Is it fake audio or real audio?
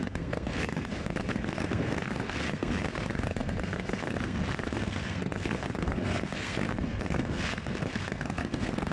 fake